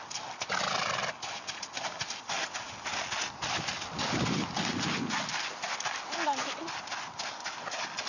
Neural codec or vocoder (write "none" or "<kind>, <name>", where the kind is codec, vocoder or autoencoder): none